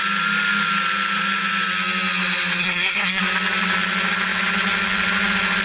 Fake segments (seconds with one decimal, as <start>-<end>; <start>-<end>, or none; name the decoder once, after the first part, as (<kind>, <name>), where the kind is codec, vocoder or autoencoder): 2.6-3.2 (codec, SNAC)